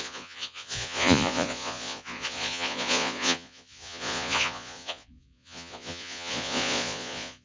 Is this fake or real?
fake